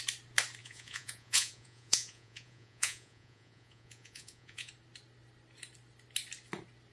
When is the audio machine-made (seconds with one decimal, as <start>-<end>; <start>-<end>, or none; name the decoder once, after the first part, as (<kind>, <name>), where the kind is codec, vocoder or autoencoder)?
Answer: 0.6-4.7 (vocoder, Vocos)